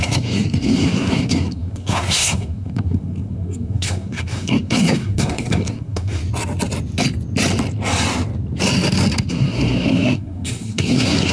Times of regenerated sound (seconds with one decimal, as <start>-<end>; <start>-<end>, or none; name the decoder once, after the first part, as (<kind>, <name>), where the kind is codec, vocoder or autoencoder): 0.0-6.2 (codec, SNAC); 9.3-11.3